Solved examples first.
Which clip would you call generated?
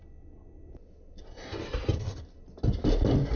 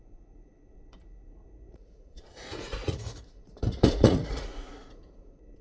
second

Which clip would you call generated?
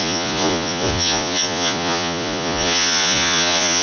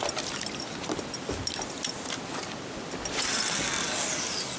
first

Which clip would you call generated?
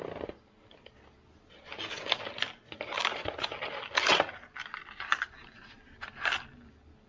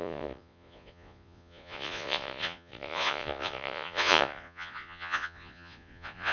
second